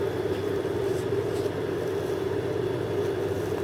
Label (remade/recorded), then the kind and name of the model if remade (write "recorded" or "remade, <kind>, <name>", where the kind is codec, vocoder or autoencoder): recorded